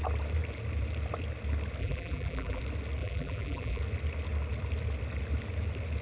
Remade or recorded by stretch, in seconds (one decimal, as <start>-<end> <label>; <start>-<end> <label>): 0.0-1.8 recorded; 1.8-2.6 remade; 2.6-3.0 recorded; 3.0-3.8 remade; 3.8-6.0 recorded